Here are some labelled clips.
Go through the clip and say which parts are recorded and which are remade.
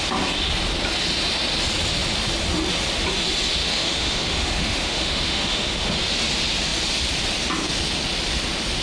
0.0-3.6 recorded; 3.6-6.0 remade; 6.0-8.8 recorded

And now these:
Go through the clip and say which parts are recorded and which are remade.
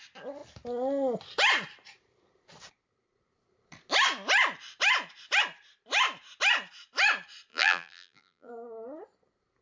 0.0-7.5 recorded; 7.5-8.5 remade; 8.5-9.6 recorded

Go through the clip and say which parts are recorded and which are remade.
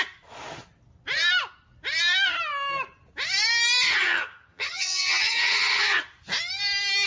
0.0-3.9 recorded; 3.9-6.0 remade; 6.0-7.1 recorded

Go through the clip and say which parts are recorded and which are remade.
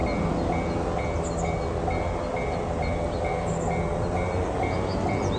0.0-5.4 recorded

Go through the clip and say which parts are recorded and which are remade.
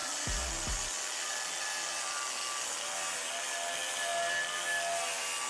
0.0-5.5 recorded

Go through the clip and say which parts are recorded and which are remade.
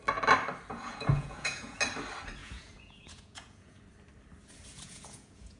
0.0-0.7 recorded; 0.7-1.8 remade; 1.8-2.4 recorded; 2.4-3.8 remade; 3.8-4.7 recorded; 4.7-5.6 remade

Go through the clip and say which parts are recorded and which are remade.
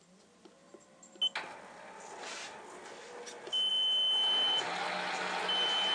0.0-5.9 recorded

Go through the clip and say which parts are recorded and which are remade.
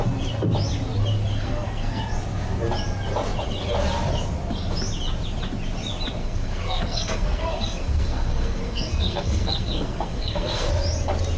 0.0-1.3 recorded; 1.3-2.0 remade; 2.0-6.2 recorded; 6.2-10.7 remade; 10.7-11.4 recorded